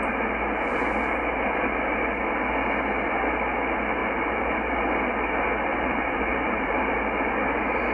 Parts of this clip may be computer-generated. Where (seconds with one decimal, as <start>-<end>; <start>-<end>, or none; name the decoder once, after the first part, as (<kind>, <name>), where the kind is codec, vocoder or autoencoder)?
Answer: 4.0-4.8 (vocoder, BigVGAN v2); 5.7-6.9